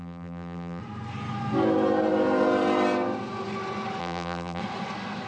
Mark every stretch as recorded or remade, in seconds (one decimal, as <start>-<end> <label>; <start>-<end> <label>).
0.0-0.8 remade; 0.8-4.0 recorded; 4.0-4.6 remade; 4.6-5.3 recorded